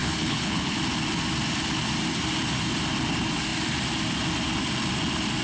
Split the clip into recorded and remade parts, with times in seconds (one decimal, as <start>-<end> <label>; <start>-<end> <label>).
0.0-0.8 remade; 0.8-5.4 recorded